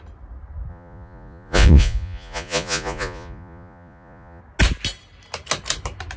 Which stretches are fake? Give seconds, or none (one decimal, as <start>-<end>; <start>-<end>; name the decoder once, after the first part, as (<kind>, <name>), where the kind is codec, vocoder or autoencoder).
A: 0.7-4.4 (vocoder, Vocos)